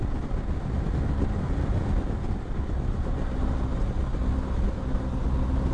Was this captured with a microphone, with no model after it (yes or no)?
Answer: yes